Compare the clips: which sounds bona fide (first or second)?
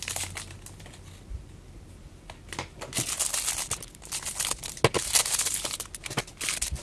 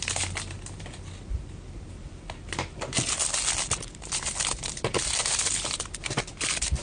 first